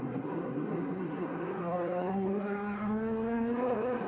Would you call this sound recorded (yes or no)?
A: no